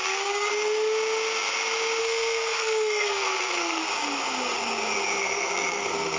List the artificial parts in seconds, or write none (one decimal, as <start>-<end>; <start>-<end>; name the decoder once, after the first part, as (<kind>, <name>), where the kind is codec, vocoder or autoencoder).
0.0-0.5 (codec, SNAC); 2.0-3.8; 5.2-6.2